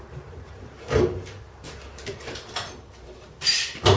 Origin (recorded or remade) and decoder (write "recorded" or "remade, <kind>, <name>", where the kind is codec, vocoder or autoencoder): remade, vocoder, BigVGAN v2